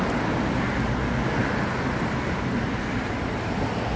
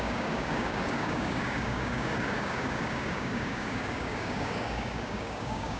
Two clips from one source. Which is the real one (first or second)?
first